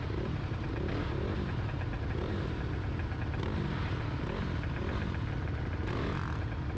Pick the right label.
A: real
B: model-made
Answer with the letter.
A